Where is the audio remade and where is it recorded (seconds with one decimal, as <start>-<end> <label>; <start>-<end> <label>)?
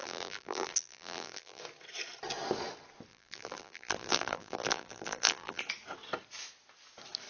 0.0-1.6 remade; 1.6-3.1 recorded; 3.1-5.6 remade; 5.6-7.3 recorded